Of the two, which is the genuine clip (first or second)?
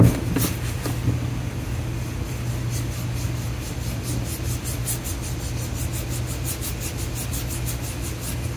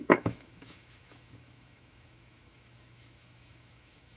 first